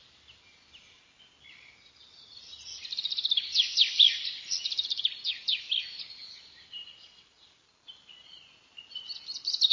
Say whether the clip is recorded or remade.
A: recorded